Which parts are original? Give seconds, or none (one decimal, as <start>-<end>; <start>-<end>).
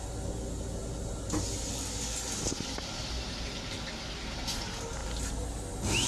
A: 0.0-6.1